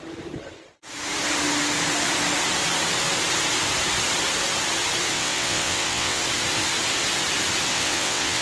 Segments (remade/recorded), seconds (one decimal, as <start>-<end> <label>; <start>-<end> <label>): 0.0-5.1 recorded; 5.1-6.2 remade; 6.2-7.7 recorded; 7.7-8.4 remade